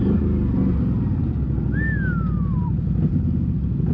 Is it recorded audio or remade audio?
recorded